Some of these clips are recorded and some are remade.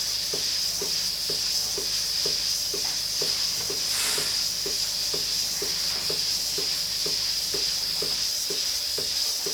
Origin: recorded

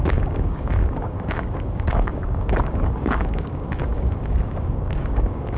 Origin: remade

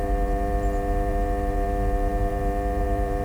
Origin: remade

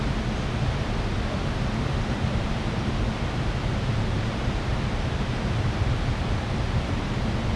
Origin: remade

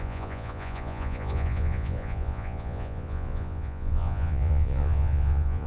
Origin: remade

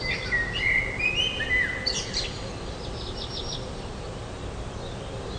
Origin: recorded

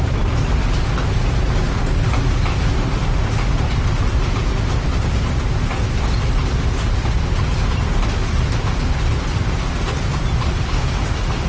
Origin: recorded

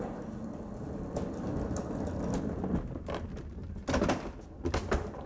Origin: recorded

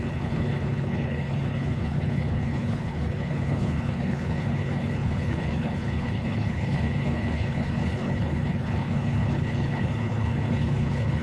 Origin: remade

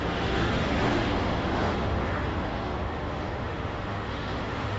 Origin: remade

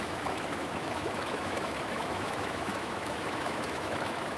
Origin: remade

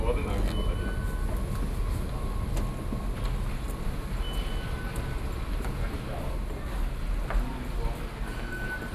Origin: recorded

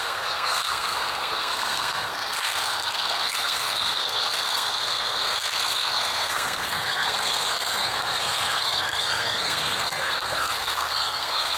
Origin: remade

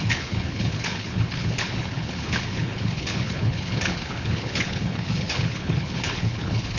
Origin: remade